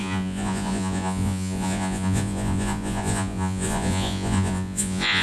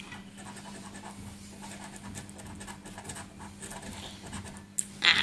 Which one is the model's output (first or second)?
first